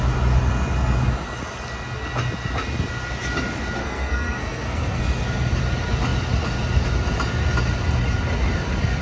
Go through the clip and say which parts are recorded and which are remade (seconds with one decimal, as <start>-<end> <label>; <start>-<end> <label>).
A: 0.0-3.8 recorded; 3.8-5.0 remade; 5.0-9.0 recorded